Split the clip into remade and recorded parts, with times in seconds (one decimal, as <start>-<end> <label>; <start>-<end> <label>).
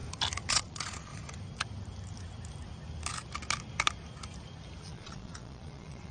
0.0-0.5 recorded; 0.5-1.1 remade; 1.1-4.8 recorded; 4.8-6.1 remade